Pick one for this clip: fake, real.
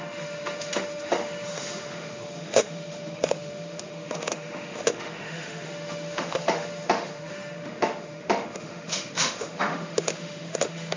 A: fake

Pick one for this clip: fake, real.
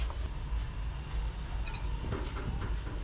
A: real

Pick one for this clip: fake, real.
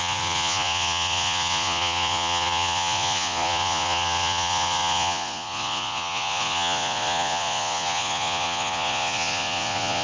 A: fake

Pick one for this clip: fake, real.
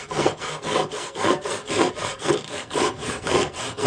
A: fake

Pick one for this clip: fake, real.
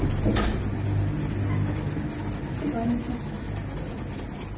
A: real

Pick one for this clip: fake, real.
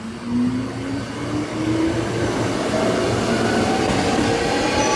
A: real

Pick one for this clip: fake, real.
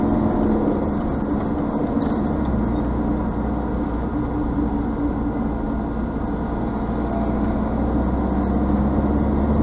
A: real